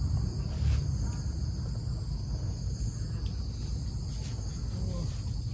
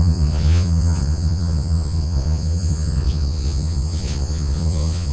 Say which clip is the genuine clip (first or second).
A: first